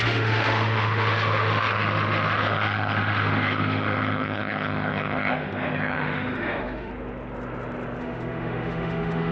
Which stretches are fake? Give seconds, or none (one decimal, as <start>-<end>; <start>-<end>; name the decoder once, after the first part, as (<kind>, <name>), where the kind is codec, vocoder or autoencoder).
0.0-6.9 (autoencoder, DAC-VAE); 8.0-9.3